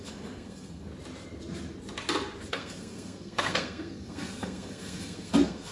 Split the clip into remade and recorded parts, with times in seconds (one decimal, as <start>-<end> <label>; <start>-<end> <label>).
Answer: 0.0-0.9 remade; 0.9-2.5 recorded; 2.5-5.7 remade